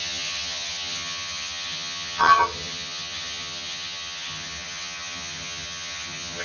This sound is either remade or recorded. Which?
remade